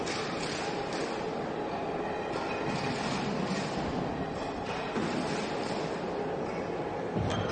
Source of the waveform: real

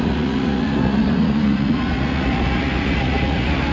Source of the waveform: fake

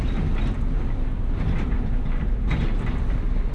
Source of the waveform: real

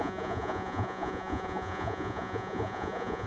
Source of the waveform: fake